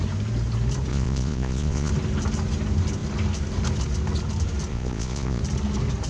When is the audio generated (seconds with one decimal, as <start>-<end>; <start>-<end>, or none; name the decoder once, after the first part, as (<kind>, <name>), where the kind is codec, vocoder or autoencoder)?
0.9-1.9 (vocoder, Vocos); 4.7-5.4